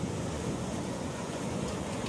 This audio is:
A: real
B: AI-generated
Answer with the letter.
B